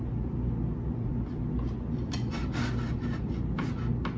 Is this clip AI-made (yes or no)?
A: no